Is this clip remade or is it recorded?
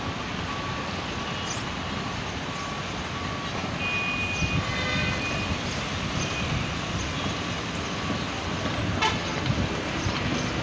recorded